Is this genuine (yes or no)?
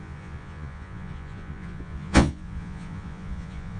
no